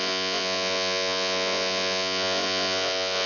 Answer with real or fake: fake